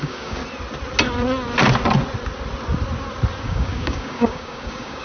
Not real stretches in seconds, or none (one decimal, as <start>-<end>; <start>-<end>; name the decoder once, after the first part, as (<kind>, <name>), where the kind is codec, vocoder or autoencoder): 0.0-0.4 (codec, DAC); 3.4-5.0

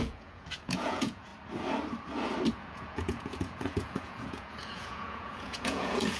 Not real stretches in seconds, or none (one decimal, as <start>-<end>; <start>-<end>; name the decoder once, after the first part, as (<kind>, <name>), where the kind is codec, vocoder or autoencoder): 0.0-1.3 (vocoder, Vocos); 2.5-6.2

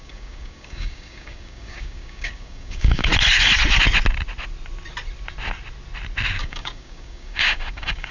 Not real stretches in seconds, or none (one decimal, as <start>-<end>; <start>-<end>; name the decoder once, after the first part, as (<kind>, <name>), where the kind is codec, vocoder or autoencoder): 0.0-3.1 (codec, DAC); 6.4-8.1

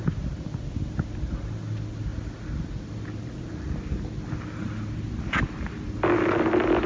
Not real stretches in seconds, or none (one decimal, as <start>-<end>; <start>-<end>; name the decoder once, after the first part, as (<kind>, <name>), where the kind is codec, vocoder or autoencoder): none

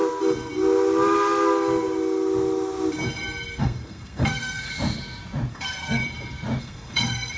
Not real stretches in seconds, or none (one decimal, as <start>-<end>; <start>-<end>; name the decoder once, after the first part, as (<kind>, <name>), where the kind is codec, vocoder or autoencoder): 3.6-4.7 (codec, SNAC); 5.5-6.0; 6.6-7.4

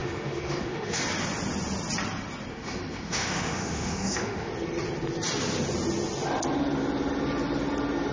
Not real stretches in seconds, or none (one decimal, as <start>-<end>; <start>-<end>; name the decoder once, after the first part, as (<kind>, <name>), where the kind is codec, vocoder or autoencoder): 0.0-1.0 (autoencoder, DAC-VAE); 2.5-4.5